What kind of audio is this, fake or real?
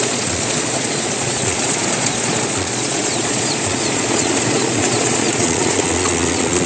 fake